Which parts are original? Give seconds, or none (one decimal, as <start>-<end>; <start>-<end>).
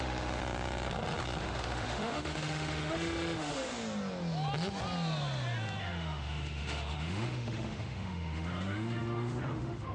0.4-1.4; 3.7-5.8